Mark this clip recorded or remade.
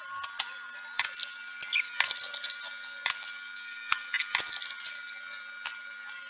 recorded